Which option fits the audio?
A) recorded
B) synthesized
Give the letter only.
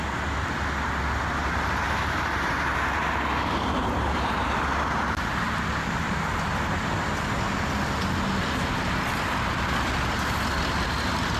A